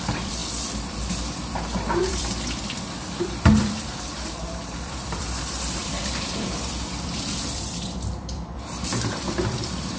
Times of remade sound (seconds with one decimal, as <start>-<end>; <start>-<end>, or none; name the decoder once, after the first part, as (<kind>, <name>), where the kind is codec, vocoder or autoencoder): 0.0-10.0 (vocoder, BigVGAN v2)

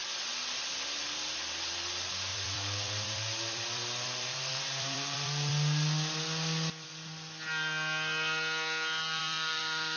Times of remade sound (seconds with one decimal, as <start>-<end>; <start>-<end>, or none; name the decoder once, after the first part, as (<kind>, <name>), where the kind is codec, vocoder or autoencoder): 0.7-5.5 (vocoder, BigVGAN v2); 9.2-10.0

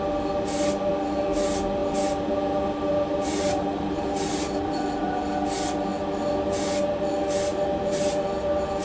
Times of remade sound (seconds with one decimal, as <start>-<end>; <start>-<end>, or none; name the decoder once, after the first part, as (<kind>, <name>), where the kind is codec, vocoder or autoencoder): 1.8-4.7 (vocoder, BigVGAN v2); 7.5-8.1